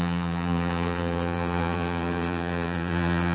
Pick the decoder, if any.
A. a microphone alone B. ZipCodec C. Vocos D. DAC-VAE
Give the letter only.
C